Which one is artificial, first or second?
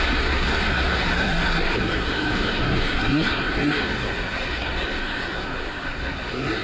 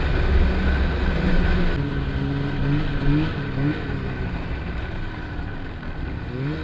first